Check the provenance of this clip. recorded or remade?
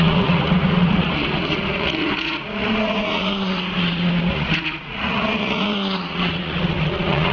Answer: remade